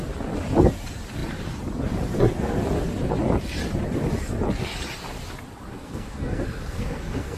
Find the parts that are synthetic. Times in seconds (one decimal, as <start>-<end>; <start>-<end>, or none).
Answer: 5.7-7.4